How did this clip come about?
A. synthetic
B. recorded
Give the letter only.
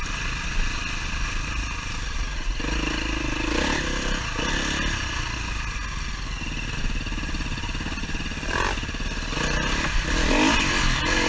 B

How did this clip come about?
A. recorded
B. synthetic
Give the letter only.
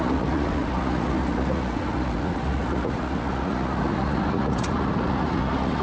B